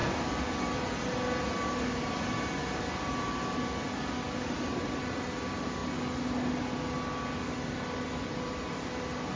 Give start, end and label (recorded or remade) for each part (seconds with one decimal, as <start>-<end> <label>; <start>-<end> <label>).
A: 0.0-9.4 recorded